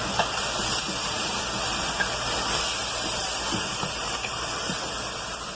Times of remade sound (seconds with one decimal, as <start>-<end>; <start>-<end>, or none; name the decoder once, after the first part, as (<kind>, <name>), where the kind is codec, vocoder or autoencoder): 0.7-1.4 (vocoder, BigVGAN v2); 2.8-4.8